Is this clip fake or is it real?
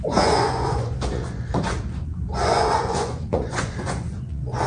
fake